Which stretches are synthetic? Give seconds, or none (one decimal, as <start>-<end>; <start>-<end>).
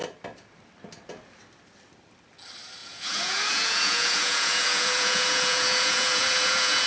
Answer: 2.8-6.9